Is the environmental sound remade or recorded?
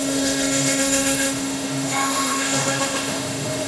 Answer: remade